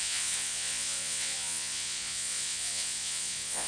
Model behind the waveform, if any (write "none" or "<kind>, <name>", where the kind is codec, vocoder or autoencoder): vocoder, Vocos